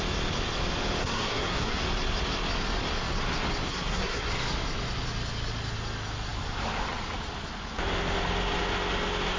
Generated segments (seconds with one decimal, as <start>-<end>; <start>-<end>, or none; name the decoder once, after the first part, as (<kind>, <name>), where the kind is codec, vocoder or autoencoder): 1.0-1.8 (codec, SNAC); 3.7-4.3